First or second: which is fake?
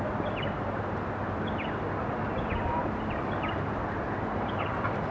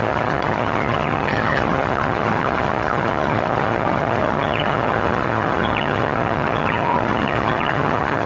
second